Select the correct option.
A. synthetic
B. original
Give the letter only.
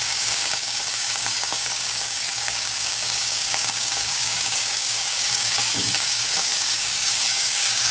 A